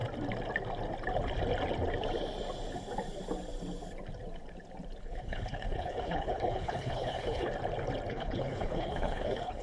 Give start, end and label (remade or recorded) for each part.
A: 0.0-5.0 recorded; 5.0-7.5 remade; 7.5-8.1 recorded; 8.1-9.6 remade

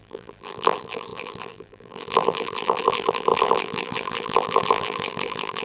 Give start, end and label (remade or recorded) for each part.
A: 0.0-5.6 remade

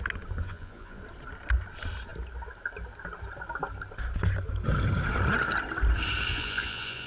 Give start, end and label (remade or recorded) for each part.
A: 0.0-0.4 recorded; 0.4-1.0 remade; 1.0-6.3 recorded; 6.3-7.1 remade